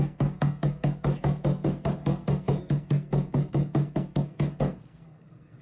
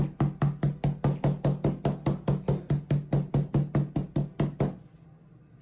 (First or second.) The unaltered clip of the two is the second